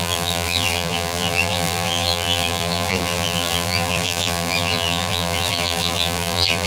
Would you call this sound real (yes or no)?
no